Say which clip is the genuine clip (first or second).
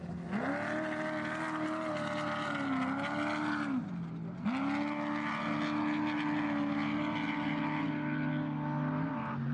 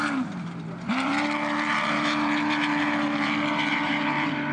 first